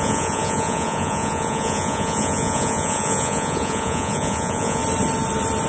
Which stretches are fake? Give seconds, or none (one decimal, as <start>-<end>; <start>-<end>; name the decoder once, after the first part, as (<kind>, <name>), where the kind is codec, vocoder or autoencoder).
0.0-4.8 (vocoder, Vocos)

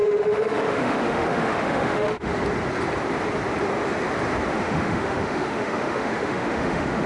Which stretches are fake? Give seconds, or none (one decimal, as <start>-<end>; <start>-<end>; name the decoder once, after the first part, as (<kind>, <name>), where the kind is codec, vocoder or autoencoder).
0.0-2.3 (autoencoder, DAC-VAE); 4.5-7.1

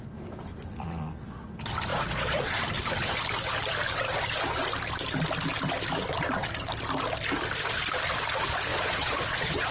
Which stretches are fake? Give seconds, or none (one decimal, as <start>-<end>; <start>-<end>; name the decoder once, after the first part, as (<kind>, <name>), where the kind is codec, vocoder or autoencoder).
1.9-2.6 (vocoder, Vocos); 8.7-9.7

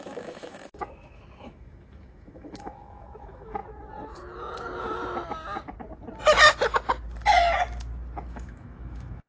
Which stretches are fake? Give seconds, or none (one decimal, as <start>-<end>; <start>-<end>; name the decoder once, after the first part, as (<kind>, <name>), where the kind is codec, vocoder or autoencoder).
0.0-3.6 (autoencoder, DAC-VAE); 8.3-9.3

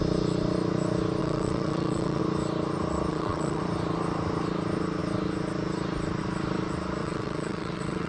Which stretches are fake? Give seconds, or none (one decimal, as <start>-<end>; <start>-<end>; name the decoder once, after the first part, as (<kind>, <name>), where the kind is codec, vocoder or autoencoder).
1.2-2.2 (vocoder, WaveNeXt); 3.1-3.6; 7.0-8.1

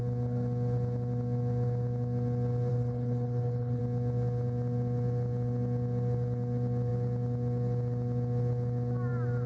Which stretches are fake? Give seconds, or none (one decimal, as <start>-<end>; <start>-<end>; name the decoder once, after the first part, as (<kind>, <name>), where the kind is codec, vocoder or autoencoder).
2.7-3.8 (codec, HILCodec)

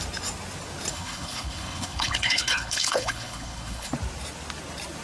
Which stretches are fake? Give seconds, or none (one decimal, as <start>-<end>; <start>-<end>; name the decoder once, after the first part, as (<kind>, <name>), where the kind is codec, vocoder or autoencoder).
0.9-3.9 (codec, HILCodec)

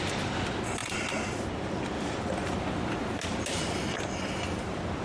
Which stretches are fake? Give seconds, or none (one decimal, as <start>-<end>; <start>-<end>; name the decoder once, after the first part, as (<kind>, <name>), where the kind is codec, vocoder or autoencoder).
none